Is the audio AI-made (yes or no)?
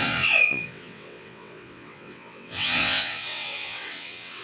yes